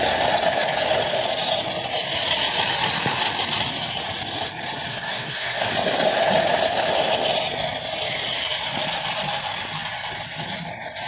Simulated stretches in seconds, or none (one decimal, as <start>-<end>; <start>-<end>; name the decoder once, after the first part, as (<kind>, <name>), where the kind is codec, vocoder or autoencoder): 4.9-5.7 (codec, SNAC)